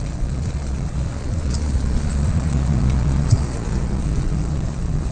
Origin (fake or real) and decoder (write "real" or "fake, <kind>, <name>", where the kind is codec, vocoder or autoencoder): fake, vocoder, Vocos